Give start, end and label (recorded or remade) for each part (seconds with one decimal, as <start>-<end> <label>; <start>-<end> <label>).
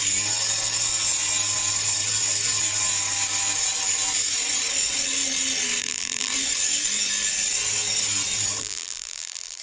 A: 0.0-5.8 recorded; 5.8-6.3 remade; 6.3-8.6 recorded; 8.6-9.6 remade